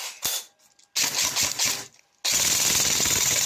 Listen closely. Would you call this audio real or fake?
real